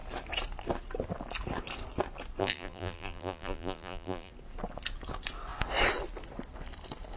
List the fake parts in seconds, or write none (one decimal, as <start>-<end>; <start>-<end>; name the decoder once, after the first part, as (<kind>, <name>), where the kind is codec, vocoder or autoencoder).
2.4-4.3 (vocoder, BigVGAN v2)